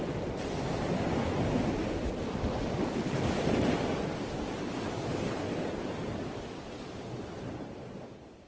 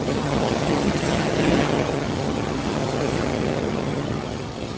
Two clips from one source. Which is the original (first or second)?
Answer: first